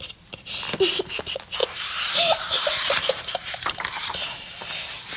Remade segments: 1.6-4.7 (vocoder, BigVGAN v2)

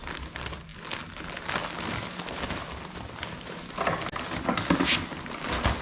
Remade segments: none

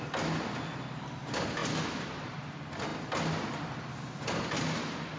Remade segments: none

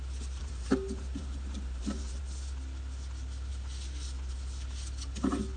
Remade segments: 0.4-2.2 (vocoder, BigVGAN v2)

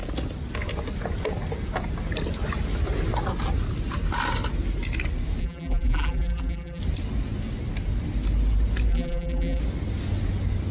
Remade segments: 5.4-6.8 (vocoder, BigVGAN v2); 8.9-9.6

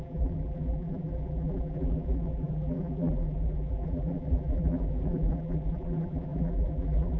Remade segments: 0.0-7.2 (vocoder, BigVGAN v2)

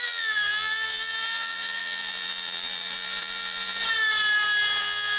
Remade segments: 0.0-3.8 (vocoder, BigVGAN v2); 4.8-5.2

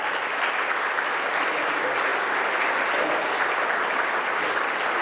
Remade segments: none